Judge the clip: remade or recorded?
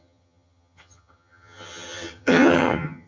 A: remade